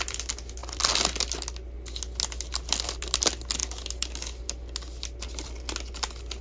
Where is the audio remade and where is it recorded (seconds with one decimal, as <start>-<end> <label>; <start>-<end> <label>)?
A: 0.0-6.4 recorded